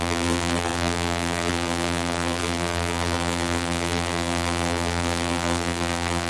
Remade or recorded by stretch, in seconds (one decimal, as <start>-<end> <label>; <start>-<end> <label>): 0.0-6.3 remade